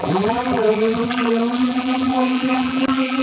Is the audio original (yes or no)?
no